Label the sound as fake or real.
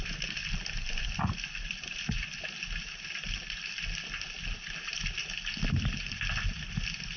real